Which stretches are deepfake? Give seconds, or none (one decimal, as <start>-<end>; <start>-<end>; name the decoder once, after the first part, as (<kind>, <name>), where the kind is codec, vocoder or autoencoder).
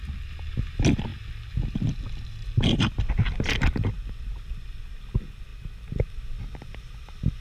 none